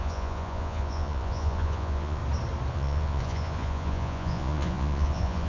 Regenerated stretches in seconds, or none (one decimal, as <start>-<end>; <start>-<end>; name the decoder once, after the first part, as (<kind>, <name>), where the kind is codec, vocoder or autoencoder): 0.0-2.2 (vocoder, Vocos); 2.7-5.5